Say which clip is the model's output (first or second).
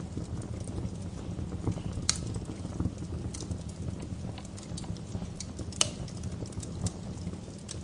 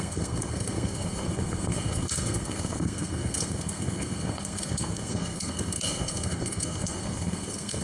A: second